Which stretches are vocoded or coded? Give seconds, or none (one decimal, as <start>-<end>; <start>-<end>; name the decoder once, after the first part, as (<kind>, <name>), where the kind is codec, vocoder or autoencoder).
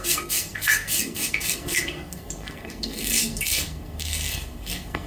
0.0-5.1 (codec, SNAC)